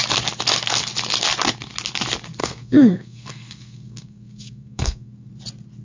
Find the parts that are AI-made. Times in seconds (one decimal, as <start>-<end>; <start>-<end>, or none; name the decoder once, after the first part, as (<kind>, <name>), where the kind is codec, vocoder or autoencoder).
2.4-5.3 (codec, SNAC)